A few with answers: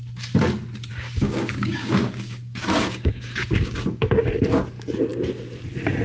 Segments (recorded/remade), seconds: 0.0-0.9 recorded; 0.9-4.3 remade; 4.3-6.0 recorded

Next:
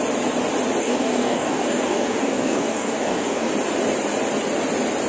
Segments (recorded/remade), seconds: 0.0-0.8 recorded; 0.8-3.5 remade; 3.5-5.1 recorded

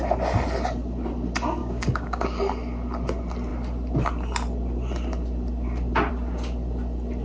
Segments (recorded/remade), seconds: 0.0-1.6 recorded; 1.6-2.4 remade; 2.4-7.2 recorded

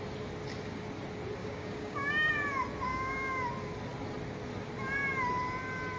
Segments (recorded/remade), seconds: 0.0-1.4 recorded; 1.4-2.3 remade; 2.3-2.9 recorded; 2.9-3.4 remade; 3.4-6.0 recorded

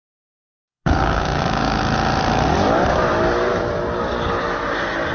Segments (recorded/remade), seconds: 0.0-1.8 remade; 1.8-5.1 recorded

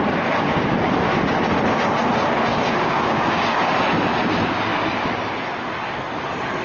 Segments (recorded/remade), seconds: 0.0-2.5 recorded; 2.5-3.7 remade; 3.7-6.6 recorded

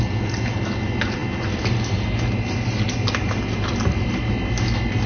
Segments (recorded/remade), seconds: 0.0-5.1 recorded